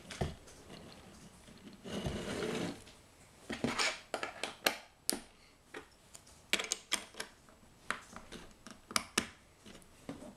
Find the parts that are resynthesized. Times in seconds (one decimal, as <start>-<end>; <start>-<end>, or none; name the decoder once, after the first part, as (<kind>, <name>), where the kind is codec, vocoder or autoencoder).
none